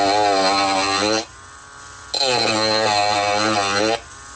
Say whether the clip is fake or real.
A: real